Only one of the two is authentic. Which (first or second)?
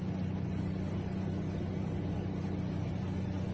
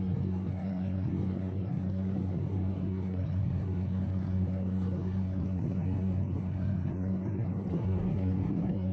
first